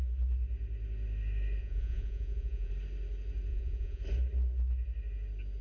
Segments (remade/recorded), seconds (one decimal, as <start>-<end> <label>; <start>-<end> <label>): 0.0-1.6 recorded; 1.6-2.7 remade; 2.7-3.5 recorded; 3.5-4.0 remade; 4.0-5.6 recorded